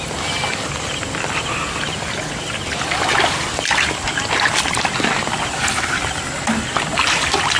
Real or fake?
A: real